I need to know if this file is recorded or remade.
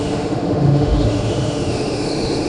remade